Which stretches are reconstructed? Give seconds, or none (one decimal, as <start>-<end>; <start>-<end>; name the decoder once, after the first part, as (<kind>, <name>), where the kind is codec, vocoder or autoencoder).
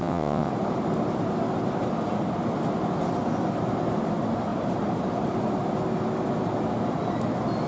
0.0-0.5 (vocoder, WaveNeXt)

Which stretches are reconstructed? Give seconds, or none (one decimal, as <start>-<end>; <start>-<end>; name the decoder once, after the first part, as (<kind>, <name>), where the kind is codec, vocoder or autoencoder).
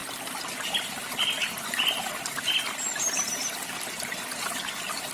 none